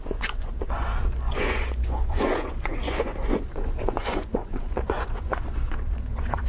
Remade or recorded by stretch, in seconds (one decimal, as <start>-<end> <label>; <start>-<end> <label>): 0.0-6.5 remade